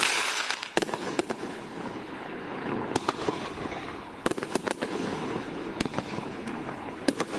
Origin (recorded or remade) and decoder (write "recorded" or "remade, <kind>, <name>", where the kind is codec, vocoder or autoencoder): remade, codec, HILCodec